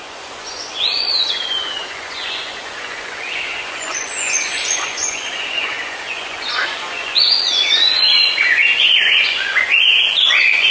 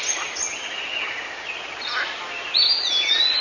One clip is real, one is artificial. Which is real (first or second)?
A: second